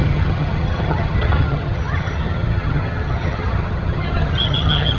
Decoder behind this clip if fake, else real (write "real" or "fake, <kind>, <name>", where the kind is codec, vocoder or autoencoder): fake, vocoder, HiFi-GAN